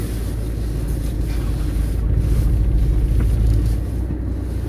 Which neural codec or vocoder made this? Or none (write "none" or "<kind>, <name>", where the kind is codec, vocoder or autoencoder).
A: none